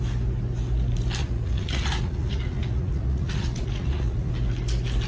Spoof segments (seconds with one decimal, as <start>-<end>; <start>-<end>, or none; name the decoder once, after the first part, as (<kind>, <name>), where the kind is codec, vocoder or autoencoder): 1.2-4.3 (vocoder, Vocos)